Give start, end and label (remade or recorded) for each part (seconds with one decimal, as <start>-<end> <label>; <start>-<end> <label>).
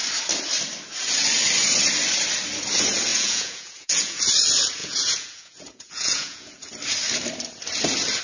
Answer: 0.0-3.1 recorded; 3.1-4.2 remade; 4.2-4.8 recorded; 4.8-6.7 remade; 6.7-8.2 recorded